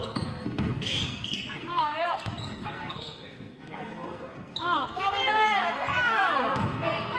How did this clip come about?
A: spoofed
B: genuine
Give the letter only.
A